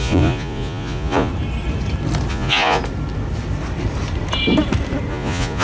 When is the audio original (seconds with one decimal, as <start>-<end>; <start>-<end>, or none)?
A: 1.3-2.3; 2.8-5.1